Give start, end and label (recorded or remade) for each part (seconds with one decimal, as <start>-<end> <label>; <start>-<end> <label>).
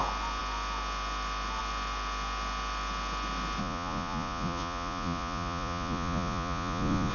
0.0-3.6 recorded; 3.6-7.1 remade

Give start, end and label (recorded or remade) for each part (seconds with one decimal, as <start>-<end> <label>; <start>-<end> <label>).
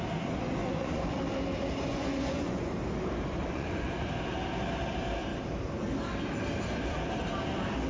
0.0-0.6 recorded; 0.6-1.2 remade; 1.2-1.9 recorded; 1.9-2.7 remade; 2.7-3.4 recorded; 3.4-3.9 remade; 3.9-7.9 recorded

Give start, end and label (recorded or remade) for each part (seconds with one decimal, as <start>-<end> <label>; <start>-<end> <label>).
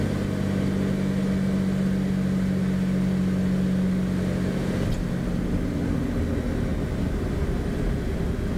0.0-8.6 recorded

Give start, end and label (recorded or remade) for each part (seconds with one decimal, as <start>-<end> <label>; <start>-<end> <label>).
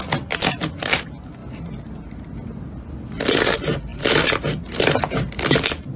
0.0-6.0 recorded